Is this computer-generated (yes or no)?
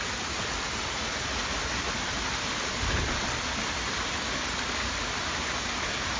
yes